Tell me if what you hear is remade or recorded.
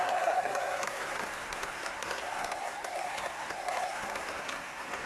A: remade